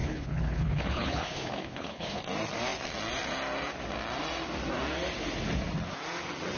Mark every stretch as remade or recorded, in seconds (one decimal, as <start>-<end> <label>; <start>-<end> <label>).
0.0-2.2 remade; 2.2-6.6 recorded

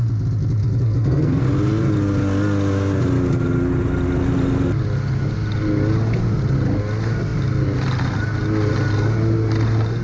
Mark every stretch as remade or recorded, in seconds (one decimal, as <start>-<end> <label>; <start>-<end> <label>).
0.0-0.6 recorded; 0.6-1.4 remade; 1.4-10.0 recorded

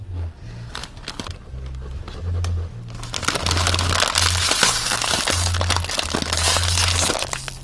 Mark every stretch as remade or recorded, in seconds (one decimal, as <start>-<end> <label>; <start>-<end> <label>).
0.0-7.6 recorded

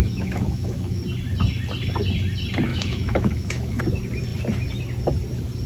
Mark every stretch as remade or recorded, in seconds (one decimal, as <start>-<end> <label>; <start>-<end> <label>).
0.0-1.0 remade; 1.0-2.7 recorded; 2.7-3.8 remade; 3.8-5.7 recorded